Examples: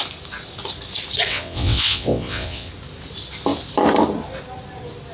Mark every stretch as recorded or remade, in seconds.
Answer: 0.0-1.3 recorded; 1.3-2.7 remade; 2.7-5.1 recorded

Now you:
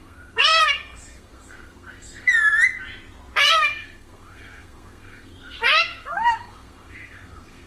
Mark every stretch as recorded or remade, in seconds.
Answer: 0.0-2.3 remade; 2.3-3.5 recorded; 3.5-7.7 remade

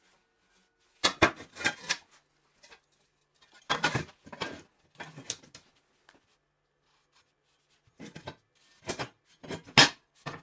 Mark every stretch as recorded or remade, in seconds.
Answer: 0.0-10.4 recorded

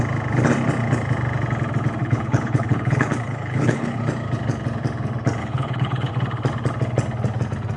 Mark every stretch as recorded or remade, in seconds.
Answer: 0.0-2.0 recorded; 2.0-4.0 remade; 4.0-5.4 recorded; 5.4-6.1 remade; 6.1-7.8 recorded